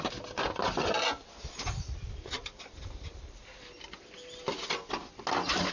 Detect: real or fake real